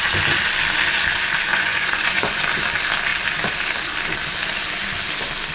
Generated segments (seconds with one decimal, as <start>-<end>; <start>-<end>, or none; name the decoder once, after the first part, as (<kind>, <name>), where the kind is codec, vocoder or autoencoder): 1.5-2.4 (vocoder, Vocos)